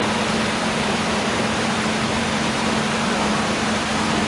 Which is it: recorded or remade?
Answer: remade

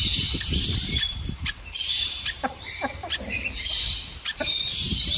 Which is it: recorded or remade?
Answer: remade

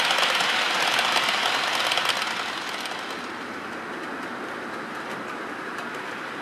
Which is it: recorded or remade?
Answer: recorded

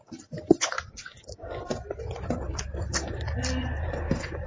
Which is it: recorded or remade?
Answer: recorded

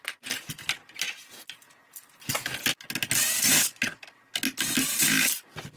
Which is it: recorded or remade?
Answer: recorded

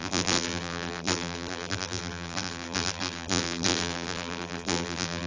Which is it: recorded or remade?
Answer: remade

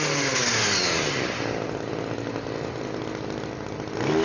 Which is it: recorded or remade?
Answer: recorded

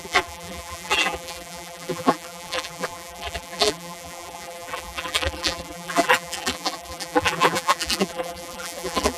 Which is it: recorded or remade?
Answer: remade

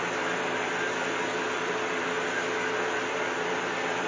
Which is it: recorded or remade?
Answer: remade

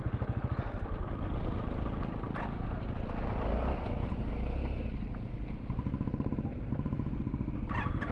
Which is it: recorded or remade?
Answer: recorded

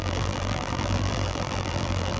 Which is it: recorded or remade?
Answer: remade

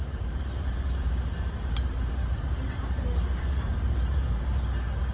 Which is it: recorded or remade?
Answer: remade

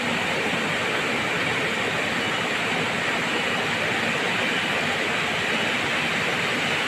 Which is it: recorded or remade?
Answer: recorded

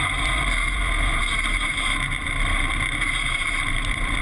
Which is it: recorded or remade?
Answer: remade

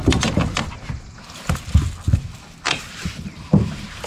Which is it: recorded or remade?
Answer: recorded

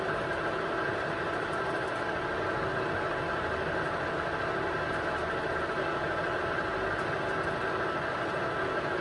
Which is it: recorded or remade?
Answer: recorded